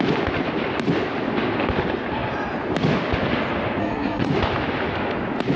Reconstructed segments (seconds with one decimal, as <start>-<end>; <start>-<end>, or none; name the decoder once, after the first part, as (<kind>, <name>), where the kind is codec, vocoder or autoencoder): 3.8-4.3 (codec, SNAC)